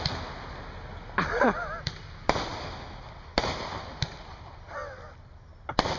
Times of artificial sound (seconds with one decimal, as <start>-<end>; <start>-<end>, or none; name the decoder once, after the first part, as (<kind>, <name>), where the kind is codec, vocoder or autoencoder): none